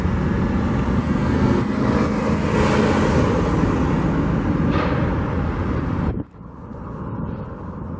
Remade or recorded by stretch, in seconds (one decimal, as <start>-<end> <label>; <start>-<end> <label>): 0.0-1.0 recorded; 1.0-1.6 remade; 1.6-8.0 recorded